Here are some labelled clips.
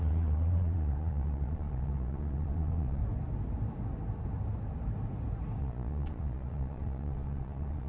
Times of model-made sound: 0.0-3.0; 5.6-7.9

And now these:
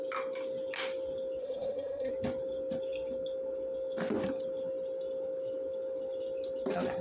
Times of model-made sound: 1.4-2.1

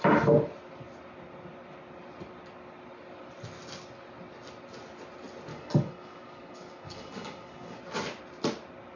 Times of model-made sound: 5.5-7.8

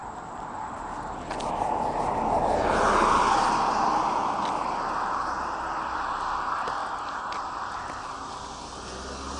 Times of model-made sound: 0.0-0.7

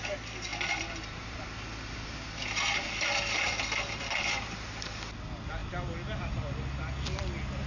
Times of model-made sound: none

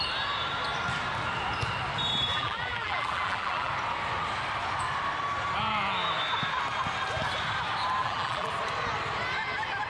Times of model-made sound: 2.3-3.7; 8.0-8.5

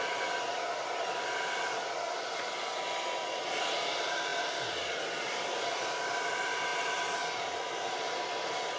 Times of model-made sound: none

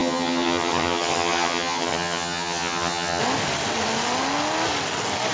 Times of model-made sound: 0.0-3.2